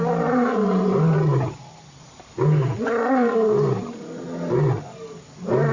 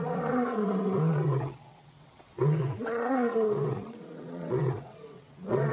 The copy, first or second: second